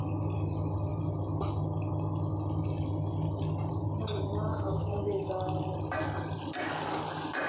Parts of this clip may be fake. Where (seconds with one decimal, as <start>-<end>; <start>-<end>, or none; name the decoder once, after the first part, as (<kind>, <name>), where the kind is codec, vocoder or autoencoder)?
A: 4.5-5.3 (autoencoder, DAC-VAE)